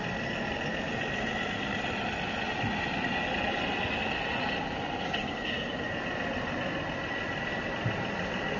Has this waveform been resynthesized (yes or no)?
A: no